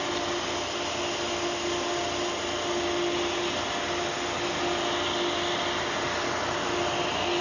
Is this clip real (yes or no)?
yes